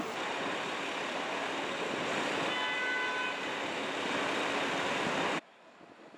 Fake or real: real